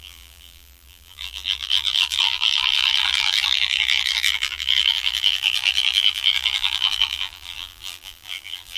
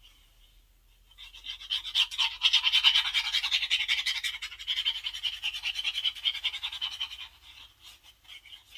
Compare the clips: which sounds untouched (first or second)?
second